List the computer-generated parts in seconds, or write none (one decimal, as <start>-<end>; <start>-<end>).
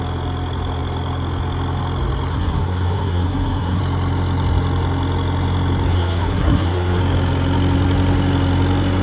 2.3-3.8; 5.9-7.0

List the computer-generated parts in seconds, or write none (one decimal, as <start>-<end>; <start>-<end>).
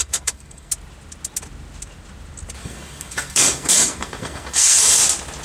0.0-0.7; 2.6-5.0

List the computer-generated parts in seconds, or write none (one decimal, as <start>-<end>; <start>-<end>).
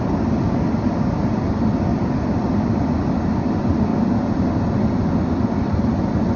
none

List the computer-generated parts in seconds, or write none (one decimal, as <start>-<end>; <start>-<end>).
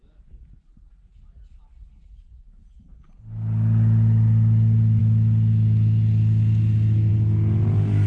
none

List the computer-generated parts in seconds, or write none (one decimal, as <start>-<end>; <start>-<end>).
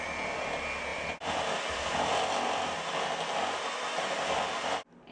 none